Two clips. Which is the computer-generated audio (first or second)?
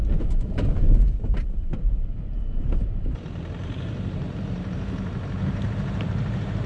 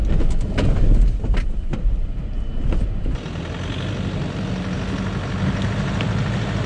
first